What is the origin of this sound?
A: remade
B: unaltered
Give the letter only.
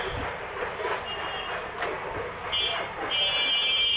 B